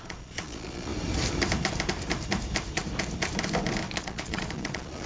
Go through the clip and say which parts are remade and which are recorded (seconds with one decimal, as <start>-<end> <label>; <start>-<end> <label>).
0.0-0.9 remade; 0.9-4.0 recorded; 4.0-5.1 remade